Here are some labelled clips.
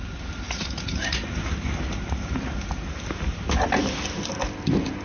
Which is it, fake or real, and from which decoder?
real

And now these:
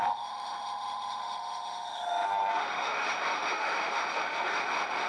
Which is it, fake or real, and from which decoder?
fake, autoencoder, DAC-VAE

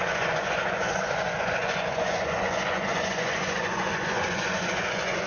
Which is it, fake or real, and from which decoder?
fake, vocoder, Vocos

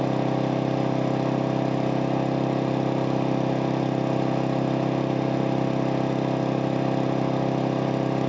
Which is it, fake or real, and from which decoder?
real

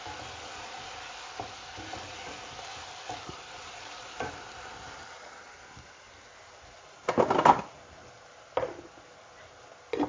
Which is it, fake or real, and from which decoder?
real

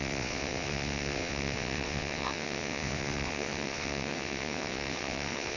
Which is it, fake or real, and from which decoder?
fake, vocoder, WaveNeXt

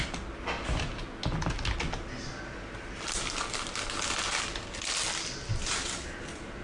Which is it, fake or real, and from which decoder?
real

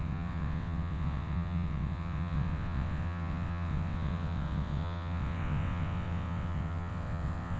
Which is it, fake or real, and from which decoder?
fake, vocoder, WaveNeXt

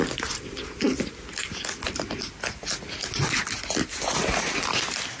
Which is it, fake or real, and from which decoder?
real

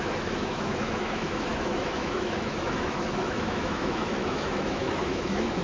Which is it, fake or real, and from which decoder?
fake, autoencoder, DAC-VAE